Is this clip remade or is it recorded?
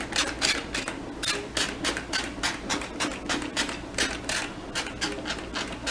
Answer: recorded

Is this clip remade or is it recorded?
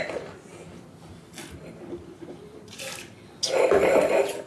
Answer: recorded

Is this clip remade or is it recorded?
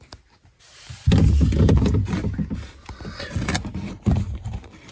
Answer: recorded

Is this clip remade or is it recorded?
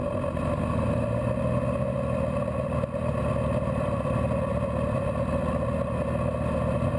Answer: recorded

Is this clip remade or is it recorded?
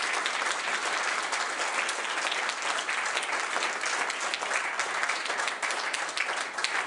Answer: recorded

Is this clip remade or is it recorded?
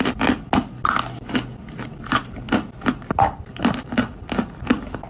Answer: recorded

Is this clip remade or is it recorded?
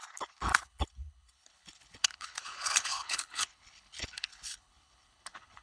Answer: remade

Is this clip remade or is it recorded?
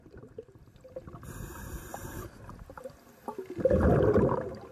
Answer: recorded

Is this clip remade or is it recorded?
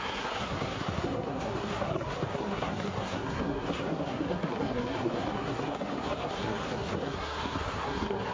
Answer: remade